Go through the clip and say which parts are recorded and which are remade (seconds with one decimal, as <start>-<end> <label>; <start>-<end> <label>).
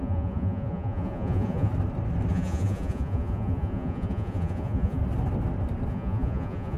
0.0-1.7 remade; 1.7-2.3 recorded; 2.3-5.0 remade; 5.0-5.9 recorded; 5.9-6.8 remade